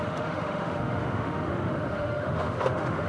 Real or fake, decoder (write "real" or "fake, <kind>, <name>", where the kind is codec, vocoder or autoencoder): fake, autoencoder, DAC-VAE